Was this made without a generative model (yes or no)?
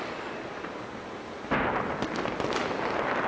yes